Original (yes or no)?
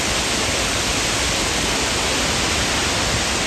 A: yes